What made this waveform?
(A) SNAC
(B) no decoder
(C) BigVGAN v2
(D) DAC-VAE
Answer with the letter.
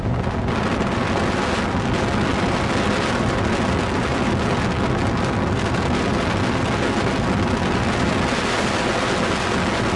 B